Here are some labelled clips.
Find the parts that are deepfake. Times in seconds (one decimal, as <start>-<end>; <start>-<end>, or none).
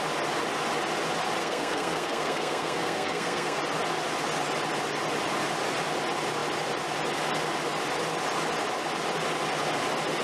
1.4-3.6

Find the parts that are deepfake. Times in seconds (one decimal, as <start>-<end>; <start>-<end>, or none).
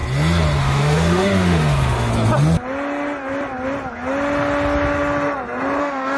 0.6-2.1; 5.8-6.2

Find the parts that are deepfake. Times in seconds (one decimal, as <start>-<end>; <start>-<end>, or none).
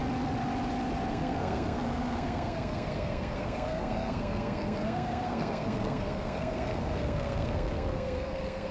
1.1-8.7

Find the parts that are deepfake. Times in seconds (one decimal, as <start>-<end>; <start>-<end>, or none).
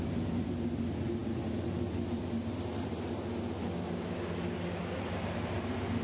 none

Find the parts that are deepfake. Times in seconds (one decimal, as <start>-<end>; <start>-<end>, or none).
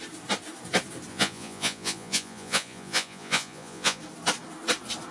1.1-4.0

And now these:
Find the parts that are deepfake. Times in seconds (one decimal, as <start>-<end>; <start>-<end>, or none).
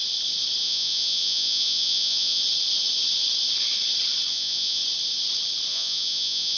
0.6-2.4; 4.3-4.8; 5.7-6.6